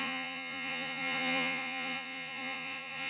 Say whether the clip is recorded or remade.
remade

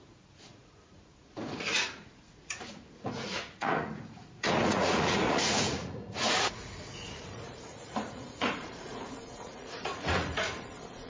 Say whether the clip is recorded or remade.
remade